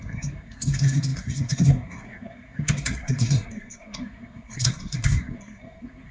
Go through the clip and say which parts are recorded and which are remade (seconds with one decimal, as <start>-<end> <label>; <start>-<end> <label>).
0.0-6.1 remade